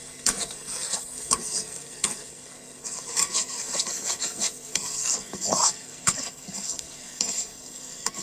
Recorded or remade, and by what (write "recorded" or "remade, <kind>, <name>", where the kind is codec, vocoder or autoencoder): remade, codec, SNAC